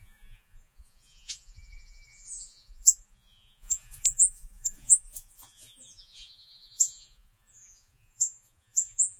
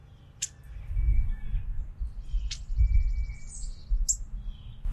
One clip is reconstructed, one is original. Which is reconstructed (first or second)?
first